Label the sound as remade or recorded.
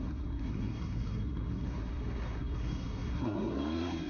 remade